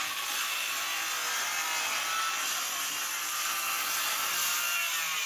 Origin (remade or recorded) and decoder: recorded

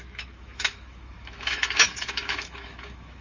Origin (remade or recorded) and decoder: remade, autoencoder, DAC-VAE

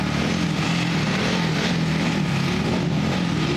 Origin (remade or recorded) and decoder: recorded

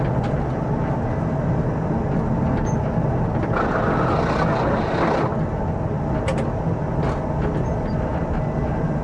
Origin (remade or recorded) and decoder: recorded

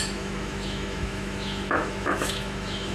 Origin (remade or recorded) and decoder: remade, autoencoder, DAC-VAE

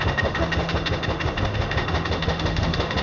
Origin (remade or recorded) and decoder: remade, autoencoder, DAC-VAE